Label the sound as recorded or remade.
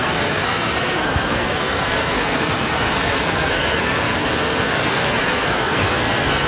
remade